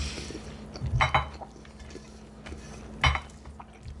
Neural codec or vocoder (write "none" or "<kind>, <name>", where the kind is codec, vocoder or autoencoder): none